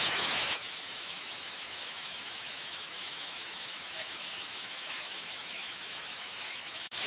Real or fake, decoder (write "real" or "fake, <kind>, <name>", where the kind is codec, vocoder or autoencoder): fake, autoencoder, DAC-VAE